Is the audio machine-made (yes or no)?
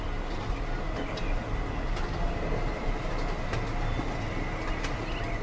no